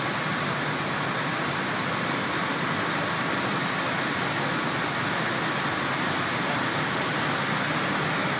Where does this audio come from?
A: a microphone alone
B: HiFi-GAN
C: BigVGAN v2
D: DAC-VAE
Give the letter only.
A